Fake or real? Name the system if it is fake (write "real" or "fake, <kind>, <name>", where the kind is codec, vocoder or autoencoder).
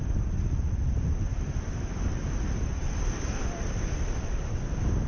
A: real